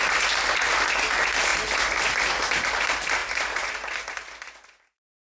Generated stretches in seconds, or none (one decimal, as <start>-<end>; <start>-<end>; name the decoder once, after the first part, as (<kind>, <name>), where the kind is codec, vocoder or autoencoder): 3.2-3.7 (vocoder, BigVGAN v2)